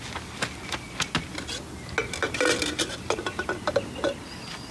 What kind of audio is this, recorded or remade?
recorded